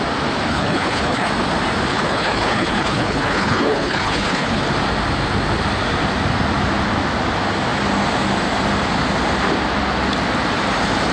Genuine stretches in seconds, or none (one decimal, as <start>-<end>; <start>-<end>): 0.0-0.5; 1.3-1.9; 4.6-11.1